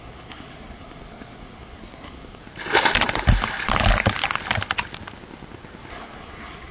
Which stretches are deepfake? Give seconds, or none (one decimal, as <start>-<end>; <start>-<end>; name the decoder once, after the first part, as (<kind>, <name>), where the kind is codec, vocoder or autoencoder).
0.0-2.4 (codec, SNAC); 5.9-6.7